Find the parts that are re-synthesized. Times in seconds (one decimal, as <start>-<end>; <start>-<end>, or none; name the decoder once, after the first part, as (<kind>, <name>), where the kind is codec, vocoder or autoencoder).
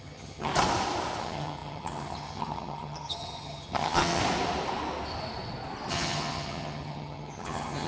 0.0-0.5 (vocoder, HiFi-GAN); 1.2-4.2; 5.9-7.9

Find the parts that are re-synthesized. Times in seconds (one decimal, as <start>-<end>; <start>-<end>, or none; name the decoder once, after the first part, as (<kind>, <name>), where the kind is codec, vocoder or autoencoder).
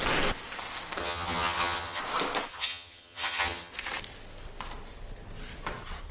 1.0-2.0 (vocoder, HiFi-GAN); 2.5-3.7